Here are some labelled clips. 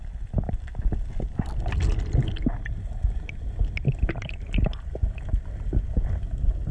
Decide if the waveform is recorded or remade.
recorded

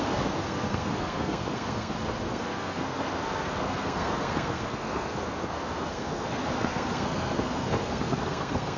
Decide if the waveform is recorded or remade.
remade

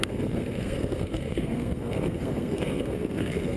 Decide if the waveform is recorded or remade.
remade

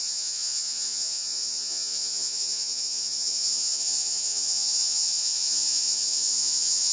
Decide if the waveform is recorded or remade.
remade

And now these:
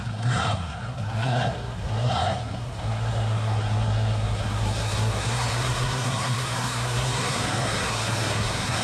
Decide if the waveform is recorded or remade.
remade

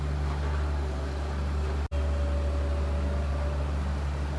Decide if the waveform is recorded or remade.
recorded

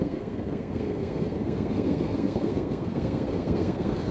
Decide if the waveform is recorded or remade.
remade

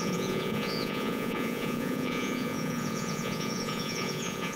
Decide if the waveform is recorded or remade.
remade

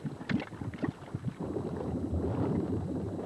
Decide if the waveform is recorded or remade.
recorded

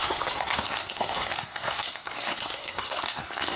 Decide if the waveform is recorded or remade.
remade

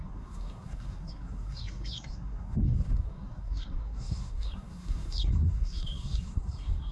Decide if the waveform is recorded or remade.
remade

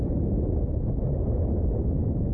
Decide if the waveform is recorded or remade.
recorded